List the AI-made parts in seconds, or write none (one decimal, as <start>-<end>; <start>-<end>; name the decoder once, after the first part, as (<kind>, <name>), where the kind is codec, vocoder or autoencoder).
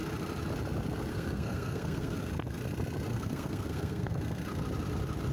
1.1-2.3 (codec, SNAC); 3.1-4.2